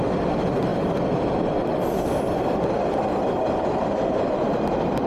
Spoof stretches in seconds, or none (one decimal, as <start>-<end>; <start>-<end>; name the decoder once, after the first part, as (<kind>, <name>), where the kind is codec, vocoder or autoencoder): none